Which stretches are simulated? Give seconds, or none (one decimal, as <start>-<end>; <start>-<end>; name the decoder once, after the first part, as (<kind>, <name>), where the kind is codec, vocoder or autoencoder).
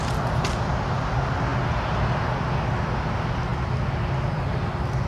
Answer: none